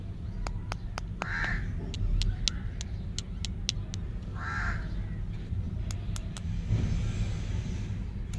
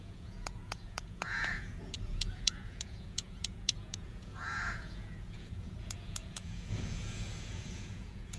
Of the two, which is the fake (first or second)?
second